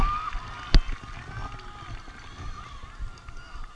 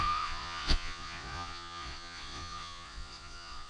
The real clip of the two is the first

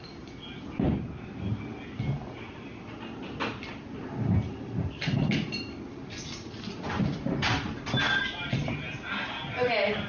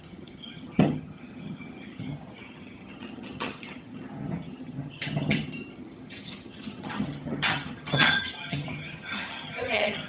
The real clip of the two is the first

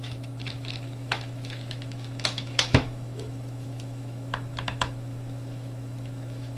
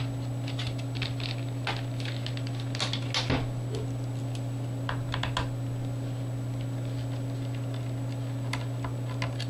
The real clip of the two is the second